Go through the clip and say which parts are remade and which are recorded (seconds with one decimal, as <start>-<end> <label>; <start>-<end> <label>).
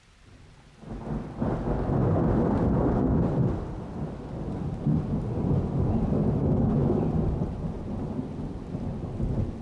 0.0-9.6 recorded